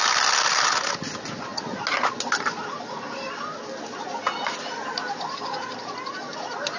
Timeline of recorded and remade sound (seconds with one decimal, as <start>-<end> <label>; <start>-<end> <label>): 0.0-6.8 recorded